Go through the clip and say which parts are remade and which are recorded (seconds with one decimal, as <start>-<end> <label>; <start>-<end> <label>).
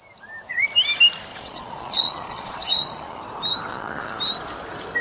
0.0-1.3 recorded; 1.3-3.2 remade; 3.2-3.7 recorded; 3.7-4.2 remade; 4.2-5.0 recorded